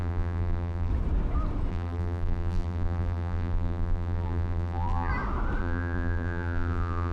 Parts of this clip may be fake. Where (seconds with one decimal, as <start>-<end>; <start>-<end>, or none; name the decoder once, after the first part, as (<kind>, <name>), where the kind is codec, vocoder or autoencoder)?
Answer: 0.0-0.9 (vocoder, BigVGAN v2); 1.7-5.1; 5.6-7.1